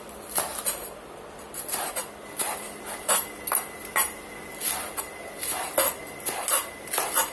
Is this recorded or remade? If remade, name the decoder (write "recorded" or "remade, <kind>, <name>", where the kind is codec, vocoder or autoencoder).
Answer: recorded